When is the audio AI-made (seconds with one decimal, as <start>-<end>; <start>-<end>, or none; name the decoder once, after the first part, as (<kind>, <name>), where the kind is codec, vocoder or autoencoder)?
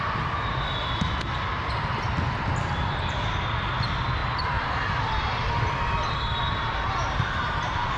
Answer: none